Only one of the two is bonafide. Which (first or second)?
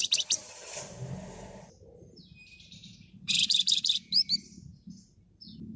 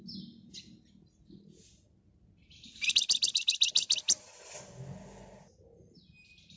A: second